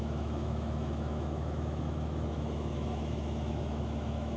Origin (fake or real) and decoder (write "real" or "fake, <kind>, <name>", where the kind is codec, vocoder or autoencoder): fake, autoencoder, DAC-VAE